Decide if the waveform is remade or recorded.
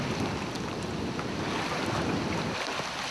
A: recorded